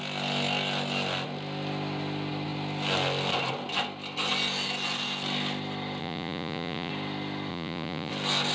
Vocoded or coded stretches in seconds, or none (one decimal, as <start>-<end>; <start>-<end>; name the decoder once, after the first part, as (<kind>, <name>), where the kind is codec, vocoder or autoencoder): 6.0-6.9 (vocoder, Vocos); 7.5-8.1